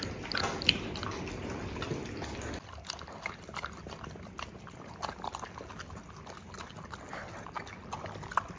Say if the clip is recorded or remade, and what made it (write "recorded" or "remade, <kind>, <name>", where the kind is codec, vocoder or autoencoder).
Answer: recorded